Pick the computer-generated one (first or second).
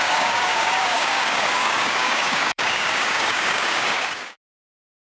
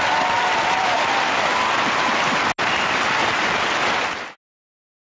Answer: first